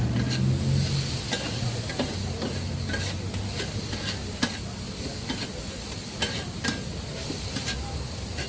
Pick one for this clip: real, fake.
real